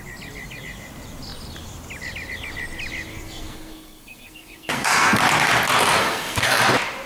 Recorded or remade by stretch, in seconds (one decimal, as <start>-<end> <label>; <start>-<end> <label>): 0.0-3.1 recorded; 3.1-5.2 remade; 5.2-6.0 recorded; 6.0-6.6 remade; 6.6-7.1 recorded